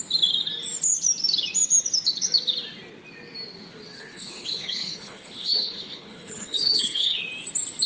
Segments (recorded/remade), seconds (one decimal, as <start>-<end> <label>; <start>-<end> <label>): 0.0-3.9 recorded; 3.9-7.2 remade; 7.2-7.9 recorded